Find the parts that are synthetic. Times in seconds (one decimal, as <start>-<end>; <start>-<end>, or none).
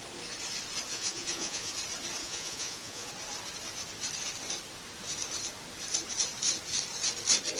0.9-1.7; 2.2-3.1